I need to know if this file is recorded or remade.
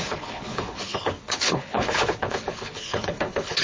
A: remade